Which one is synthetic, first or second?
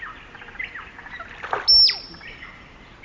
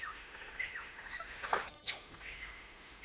second